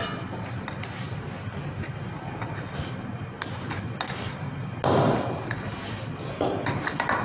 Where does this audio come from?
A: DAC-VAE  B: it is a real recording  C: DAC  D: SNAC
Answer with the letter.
B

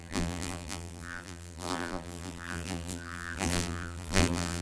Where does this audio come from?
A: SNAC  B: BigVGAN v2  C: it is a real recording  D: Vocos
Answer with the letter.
B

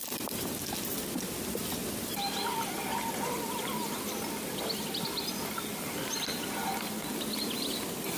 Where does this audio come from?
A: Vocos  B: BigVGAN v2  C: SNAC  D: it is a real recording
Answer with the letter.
D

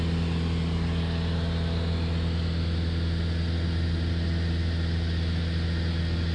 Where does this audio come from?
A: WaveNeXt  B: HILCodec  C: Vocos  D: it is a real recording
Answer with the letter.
D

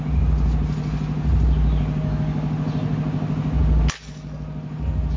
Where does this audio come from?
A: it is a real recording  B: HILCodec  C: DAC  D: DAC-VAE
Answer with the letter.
A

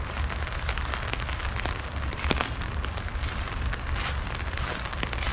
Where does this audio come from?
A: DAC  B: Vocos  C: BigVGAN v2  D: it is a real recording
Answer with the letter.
D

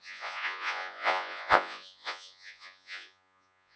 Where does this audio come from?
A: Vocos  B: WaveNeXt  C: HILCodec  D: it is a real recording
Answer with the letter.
A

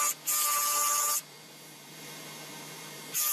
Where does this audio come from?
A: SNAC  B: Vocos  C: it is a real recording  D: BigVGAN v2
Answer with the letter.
D